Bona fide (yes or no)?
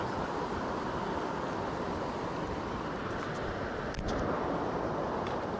yes